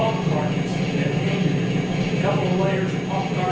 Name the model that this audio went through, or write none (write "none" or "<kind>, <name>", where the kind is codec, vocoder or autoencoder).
none